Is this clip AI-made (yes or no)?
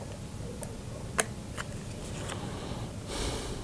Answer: no